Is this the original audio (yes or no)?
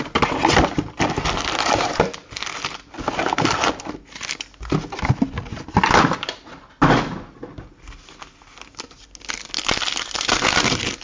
yes